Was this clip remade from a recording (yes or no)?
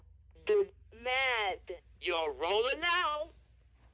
no